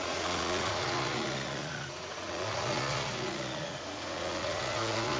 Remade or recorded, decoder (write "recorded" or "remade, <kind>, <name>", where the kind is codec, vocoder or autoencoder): remade, vocoder, Vocos